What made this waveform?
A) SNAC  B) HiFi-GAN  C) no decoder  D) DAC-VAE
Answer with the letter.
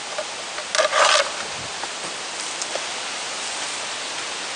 C